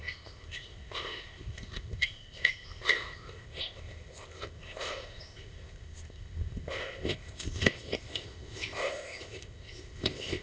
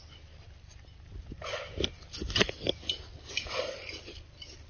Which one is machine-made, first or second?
first